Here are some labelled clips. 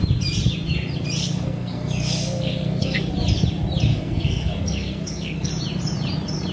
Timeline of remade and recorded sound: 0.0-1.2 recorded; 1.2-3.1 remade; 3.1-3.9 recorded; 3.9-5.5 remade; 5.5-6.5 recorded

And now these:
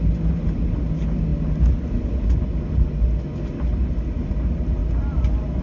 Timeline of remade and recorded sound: 0.0-5.6 recorded

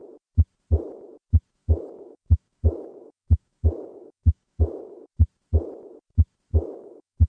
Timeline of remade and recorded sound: 0.0-1.6 recorded; 1.6-5.1 remade; 5.1-6.5 recorded; 6.5-7.3 remade

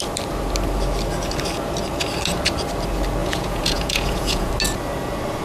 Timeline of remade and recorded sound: 0.0-3.2 recorded; 3.2-4.5 remade; 4.5-5.4 recorded